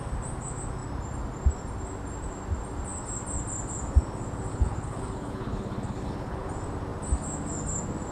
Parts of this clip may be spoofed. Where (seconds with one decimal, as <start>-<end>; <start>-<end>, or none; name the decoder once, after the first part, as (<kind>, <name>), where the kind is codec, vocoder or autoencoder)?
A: 4.5-6.5 (codec, HILCodec)

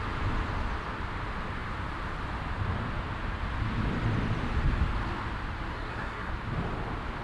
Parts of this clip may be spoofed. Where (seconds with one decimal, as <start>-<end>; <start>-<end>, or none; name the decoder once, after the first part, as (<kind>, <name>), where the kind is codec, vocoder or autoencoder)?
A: 5.7-6.3 (codec, SNAC)